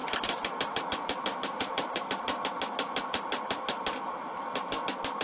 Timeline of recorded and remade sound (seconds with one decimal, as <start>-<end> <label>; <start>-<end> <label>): 0.0-2.1 remade; 2.1-5.2 recorded

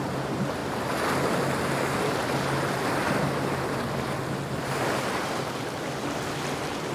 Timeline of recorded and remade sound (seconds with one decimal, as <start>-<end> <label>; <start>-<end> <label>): 0.0-6.9 recorded

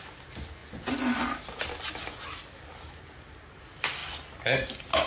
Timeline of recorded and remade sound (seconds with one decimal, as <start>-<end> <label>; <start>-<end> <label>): 0.0-5.1 recorded

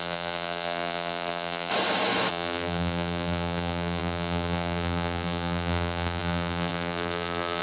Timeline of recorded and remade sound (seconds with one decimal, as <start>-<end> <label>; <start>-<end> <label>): 0.0-1.7 remade; 1.7-2.3 recorded; 2.3-7.6 remade

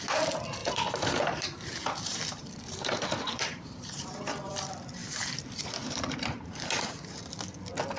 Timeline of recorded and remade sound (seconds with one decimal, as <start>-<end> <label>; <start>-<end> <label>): 0.0-0.6 recorded; 0.6-4.2 remade; 4.2-5.0 recorded; 5.0-7.3 remade; 7.3-8.0 recorded

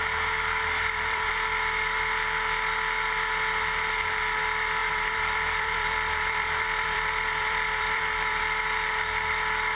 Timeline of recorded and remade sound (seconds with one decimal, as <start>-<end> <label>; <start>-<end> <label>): 0.0-0.5 recorded; 0.5-1.3 remade; 1.3-4.8 recorded; 4.8-8.4 remade; 8.4-9.8 recorded

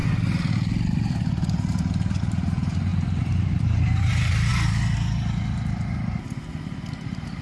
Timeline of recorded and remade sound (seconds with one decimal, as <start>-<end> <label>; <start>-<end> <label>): 0.0-2.2 recorded; 2.2-2.9 remade; 2.9-3.4 recorded; 3.4-4.5 remade; 4.5-6.9 recorded; 6.9-7.4 remade

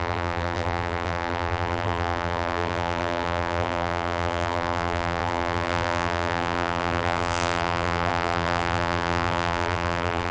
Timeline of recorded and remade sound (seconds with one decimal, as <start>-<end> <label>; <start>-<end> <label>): 0.0-10.3 remade